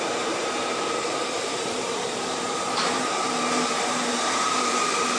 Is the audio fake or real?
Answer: fake